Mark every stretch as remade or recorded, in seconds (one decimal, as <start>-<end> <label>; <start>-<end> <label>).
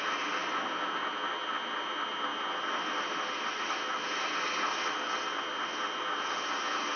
0.0-7.0 recorded